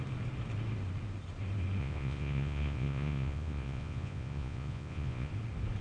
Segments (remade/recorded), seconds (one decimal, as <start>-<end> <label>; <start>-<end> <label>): 0.0-1.8 recorded; 1.8-5.3 remade; 5.3-5.8 recorded